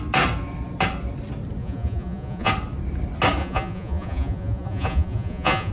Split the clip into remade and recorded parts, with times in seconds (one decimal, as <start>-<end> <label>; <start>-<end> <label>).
0.0-1.6 recorded; 1.6-2.5 remade; 2.5-3.4 recorded; 3.4-5.7 remade